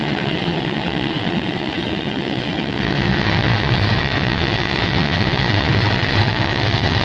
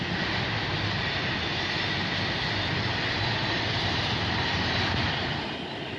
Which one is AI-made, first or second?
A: first